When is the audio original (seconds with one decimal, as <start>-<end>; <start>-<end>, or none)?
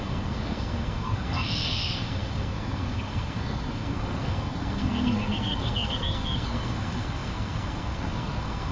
none